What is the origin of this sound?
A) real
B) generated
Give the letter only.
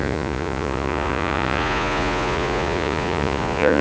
B